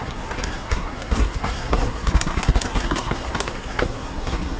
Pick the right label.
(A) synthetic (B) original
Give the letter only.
A